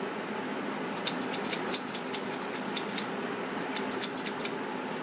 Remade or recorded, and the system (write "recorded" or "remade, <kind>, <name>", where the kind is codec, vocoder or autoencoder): recorded